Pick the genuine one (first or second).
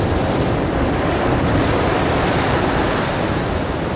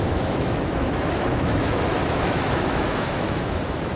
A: first